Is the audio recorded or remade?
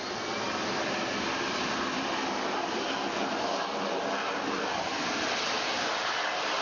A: recorded